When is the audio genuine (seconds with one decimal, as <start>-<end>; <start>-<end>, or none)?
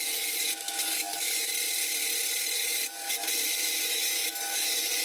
1.5-2.4; 3.2-3.9